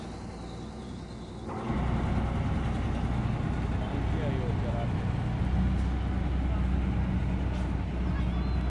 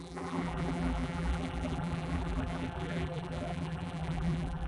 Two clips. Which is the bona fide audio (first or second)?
first